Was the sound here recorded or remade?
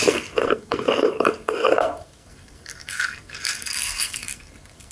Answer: remade